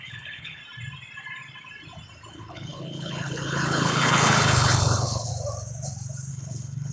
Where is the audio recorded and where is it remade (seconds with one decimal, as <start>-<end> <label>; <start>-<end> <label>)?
0.0-0.6 remade; 0.6-2.3 recorded; 2.3-5.3 remade; 5.3-6.3 recorded; 6.3-6.9 remade